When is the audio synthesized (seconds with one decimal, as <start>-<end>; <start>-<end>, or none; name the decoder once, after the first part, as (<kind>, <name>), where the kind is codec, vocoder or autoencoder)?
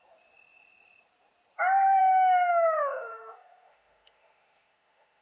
2.0-5.2 (autoencoder, DAC-VAE)